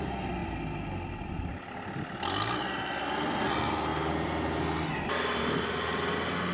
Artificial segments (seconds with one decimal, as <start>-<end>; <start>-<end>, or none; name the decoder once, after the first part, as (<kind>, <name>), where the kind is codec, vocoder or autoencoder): none